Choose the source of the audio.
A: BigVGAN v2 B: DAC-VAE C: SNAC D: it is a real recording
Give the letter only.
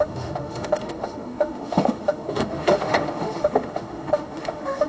B